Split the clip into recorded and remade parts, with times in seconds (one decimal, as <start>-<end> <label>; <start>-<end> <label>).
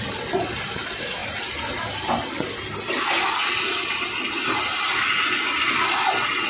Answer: 0.0-6.5 recorded